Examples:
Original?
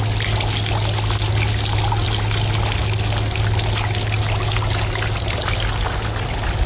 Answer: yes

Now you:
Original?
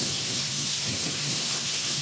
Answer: no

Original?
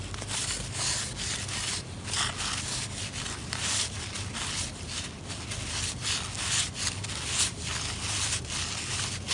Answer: yes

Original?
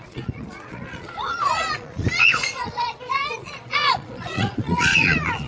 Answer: no